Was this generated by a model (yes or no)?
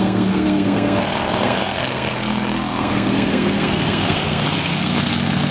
yes